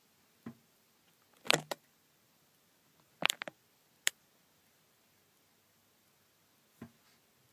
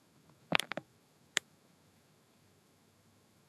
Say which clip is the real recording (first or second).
first